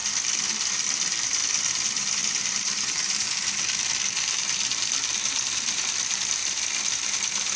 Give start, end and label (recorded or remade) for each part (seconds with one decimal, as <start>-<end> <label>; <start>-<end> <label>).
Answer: 0.0-0.7 recorded; 0.7-1.4 remade; 1.4-2.2 recorded; 2.2-6.4 remade; 6.4-6.9 recorded; 6.9-7.6 remade